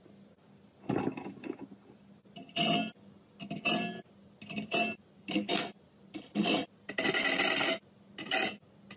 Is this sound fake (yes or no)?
no